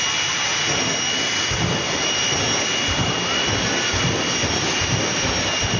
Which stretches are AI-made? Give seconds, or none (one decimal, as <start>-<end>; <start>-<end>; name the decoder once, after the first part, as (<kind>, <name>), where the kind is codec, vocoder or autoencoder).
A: none